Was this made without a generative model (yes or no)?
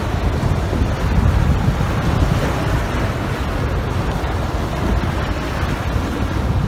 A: yes